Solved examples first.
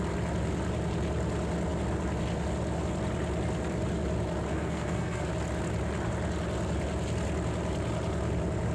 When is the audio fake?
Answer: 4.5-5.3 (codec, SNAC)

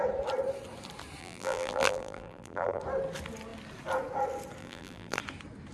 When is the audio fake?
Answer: 1.2-2.8 (vocoder, BigVGAN v2); 4.6-5.2